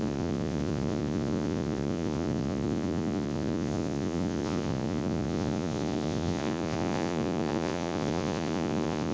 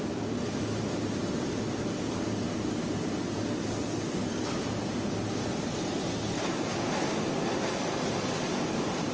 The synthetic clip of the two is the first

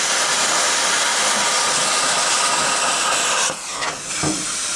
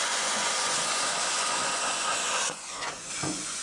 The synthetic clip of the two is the second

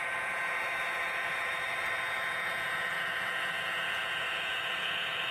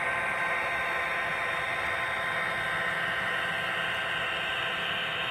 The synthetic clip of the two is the first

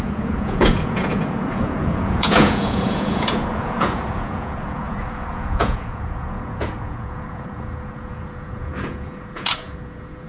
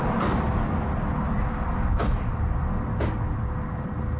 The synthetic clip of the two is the first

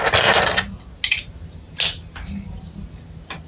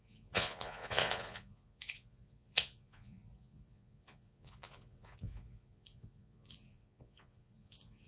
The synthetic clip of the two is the second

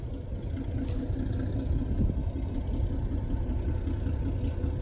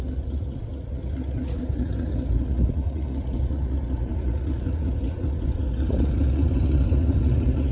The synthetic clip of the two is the second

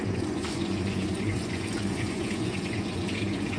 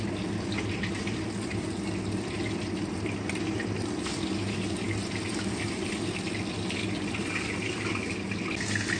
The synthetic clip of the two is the first